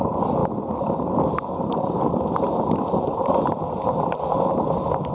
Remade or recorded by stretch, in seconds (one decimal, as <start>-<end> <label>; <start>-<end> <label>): 0.0-5.1 recorded